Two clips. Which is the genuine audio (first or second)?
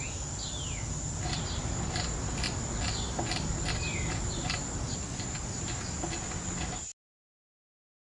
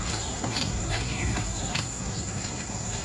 first